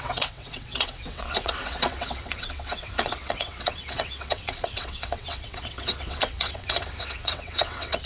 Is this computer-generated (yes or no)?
yes